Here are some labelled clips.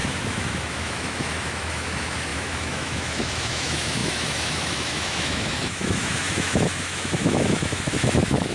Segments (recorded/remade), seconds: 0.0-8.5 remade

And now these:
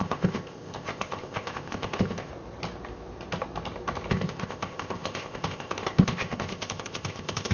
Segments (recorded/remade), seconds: 0.0-2.3 remade; 2.3-4.1 recorded; 4.1-7.5 remade

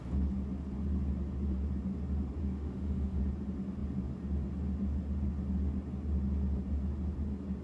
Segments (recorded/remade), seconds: 0.0-2.4 recorded; 2.4-3.2 remade; 3.2-7.6 recorded